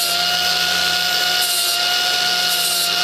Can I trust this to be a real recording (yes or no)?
yes